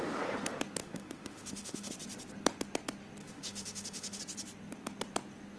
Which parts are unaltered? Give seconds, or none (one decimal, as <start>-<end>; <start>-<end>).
0.0-0.8; 1.9-3.2; 4.2-5.6

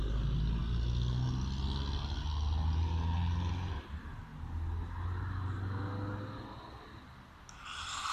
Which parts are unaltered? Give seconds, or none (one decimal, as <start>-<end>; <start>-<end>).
0.0-8.1

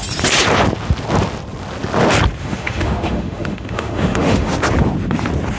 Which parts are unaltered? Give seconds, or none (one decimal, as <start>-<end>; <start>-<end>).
0.0-2.4; 4.5-5.6

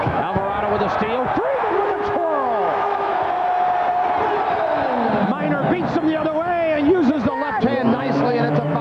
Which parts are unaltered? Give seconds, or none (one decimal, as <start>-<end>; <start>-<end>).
0.4-1.8; 3.1-7.8